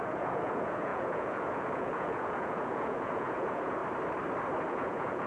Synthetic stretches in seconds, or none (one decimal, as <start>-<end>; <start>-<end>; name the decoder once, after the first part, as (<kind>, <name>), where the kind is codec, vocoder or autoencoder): 0.0-3.8 (vocoder, Vocos); 4.7-5.3